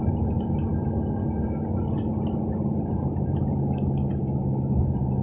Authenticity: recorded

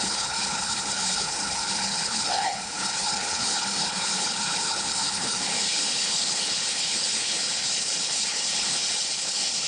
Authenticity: remade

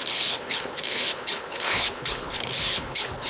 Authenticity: remade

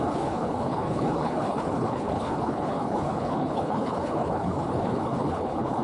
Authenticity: remade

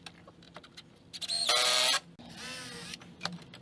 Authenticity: recorded